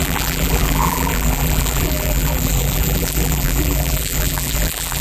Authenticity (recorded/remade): remade